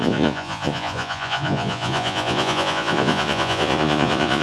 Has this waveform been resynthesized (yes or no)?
yes